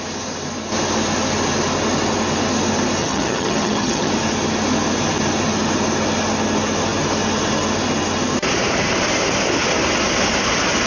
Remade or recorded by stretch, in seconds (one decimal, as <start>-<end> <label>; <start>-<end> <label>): 0.0-3.0 recorded; 3.0-4.1 remade; 4.1-10.9 recorded